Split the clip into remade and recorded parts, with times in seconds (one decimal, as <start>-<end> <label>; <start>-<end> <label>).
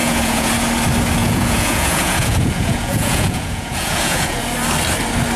0.0-0.5 remade; 0.5-1.2 recorded; 1.2-4.4 remade; 4.4-5.4 recorded